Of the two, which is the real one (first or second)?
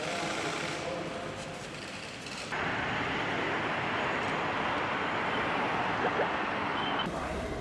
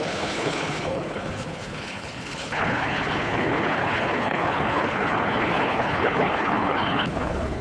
first